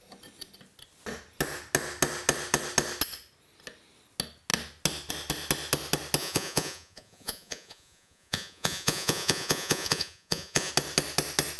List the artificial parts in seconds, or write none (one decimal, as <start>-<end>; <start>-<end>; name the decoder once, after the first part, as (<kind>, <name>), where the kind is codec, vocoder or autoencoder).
6.2-10.7 (vocoder, Vocos)